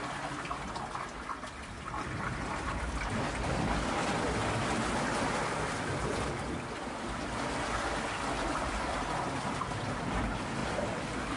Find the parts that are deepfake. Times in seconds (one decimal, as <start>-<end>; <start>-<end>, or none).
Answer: none